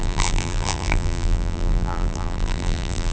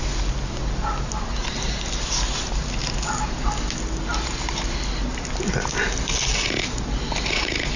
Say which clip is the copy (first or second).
first